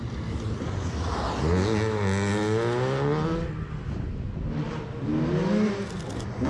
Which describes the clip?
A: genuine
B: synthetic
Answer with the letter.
A